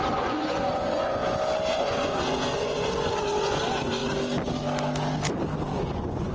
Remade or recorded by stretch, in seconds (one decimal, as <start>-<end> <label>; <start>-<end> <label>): 0.0-1.2 remade; 1.2-1.7 recorded; 1.7-4.0 remade; 4.0-5.8 recorded; 5.8-6.3 remade